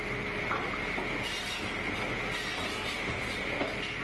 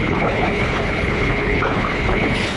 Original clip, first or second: first